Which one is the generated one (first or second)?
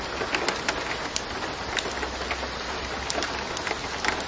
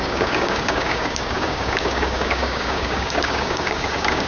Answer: second